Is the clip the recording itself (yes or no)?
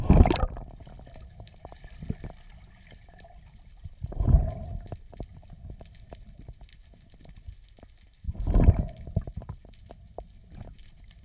yes